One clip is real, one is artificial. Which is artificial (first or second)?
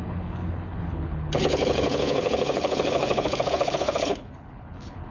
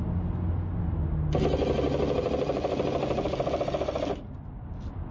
first